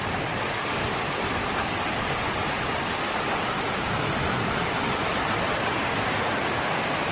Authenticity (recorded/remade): remade